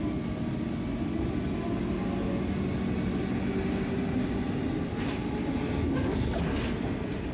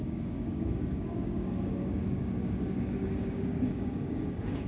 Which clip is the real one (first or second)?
first